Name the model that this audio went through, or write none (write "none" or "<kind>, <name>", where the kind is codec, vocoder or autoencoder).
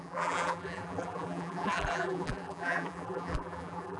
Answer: vocoder, BigVGAN v2